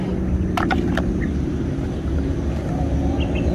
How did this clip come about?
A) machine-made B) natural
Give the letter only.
B